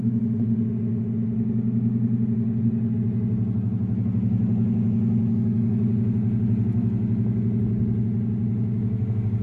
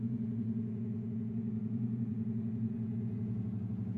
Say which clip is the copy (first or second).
second